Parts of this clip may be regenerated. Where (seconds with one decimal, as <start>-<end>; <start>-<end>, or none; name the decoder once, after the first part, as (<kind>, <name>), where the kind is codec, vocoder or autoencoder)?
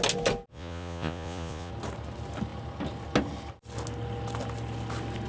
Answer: 0.5-1.7 (vocoder, Vocos)